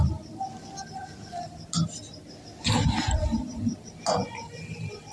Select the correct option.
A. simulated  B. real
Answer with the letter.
B